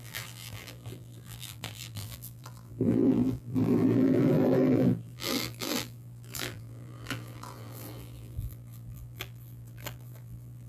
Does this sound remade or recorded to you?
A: remade